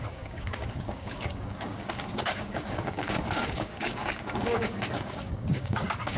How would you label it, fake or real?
fake